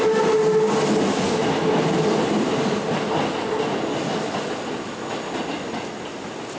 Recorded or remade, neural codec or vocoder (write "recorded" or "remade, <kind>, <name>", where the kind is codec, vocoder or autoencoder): recorded